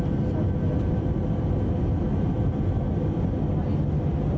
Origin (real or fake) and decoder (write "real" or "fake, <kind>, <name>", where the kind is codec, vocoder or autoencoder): real